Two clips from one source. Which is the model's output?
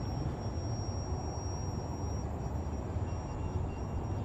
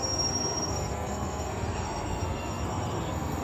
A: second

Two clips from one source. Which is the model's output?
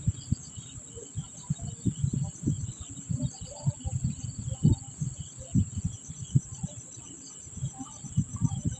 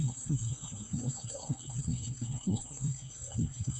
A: second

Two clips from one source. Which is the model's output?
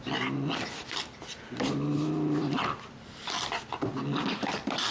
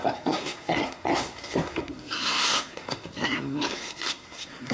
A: second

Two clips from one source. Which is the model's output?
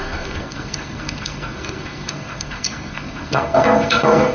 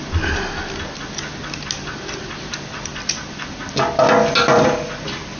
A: first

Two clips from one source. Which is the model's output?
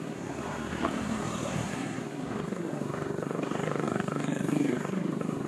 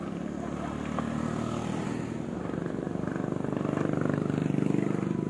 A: first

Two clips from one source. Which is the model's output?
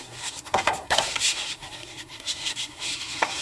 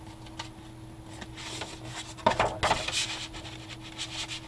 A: first